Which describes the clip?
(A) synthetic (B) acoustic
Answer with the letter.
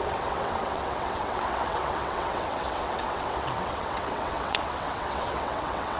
A